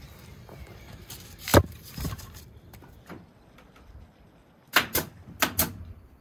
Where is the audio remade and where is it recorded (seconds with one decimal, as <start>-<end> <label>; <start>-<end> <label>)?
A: 0.0-1.5 recorded; 1.5-2.2 remade; 2.2-6.2 recorded